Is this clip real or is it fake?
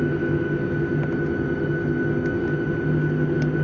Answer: real